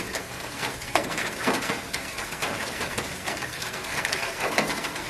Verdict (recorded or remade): remade